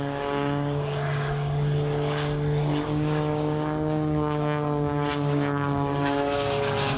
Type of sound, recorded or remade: remade